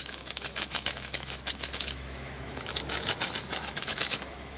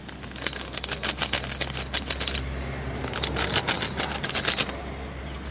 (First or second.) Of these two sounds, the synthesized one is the first